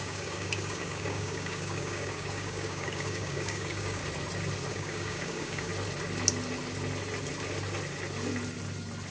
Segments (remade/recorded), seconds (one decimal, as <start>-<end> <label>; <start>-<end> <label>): 0.0-4.0 remade; 4.0-4.7 recorded; 4.7-5.7 remade; 5.7-9.1 recorded